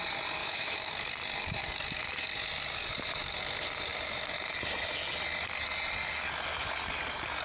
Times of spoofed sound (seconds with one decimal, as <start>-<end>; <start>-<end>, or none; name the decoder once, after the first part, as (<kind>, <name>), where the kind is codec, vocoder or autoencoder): 0.4-0.9 (autoencoder, DAC-VAE)